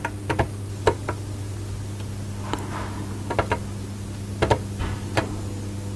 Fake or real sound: real